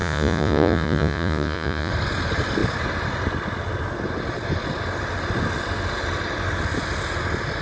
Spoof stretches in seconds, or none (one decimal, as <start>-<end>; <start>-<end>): 0.0-1.9